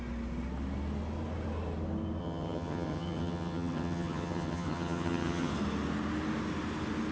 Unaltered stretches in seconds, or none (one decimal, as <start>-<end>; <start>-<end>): 0.0-2.2; 5.5-7.1